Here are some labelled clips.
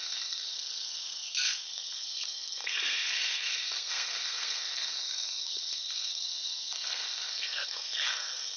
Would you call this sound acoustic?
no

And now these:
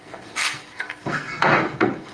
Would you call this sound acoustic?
no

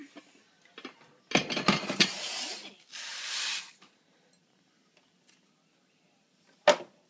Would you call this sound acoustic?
yes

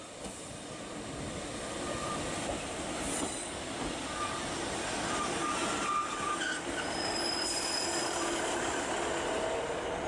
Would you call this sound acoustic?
yes